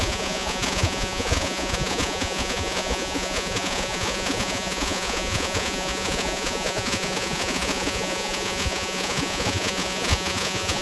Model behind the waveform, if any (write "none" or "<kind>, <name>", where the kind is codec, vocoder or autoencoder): vocoder, Vocos